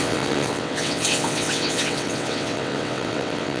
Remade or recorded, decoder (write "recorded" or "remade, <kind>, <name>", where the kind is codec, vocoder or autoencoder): remade, vocoder, WaveNeXt